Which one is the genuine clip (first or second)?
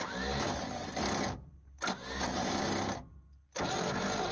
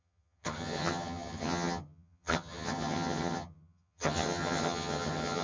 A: first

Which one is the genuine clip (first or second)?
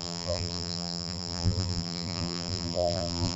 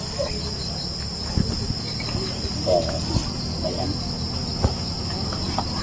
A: second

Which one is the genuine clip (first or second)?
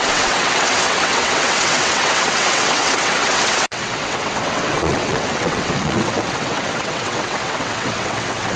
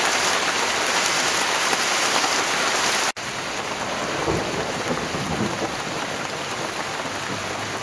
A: second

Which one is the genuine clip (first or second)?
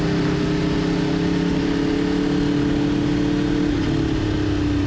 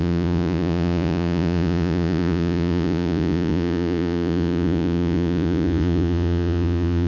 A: first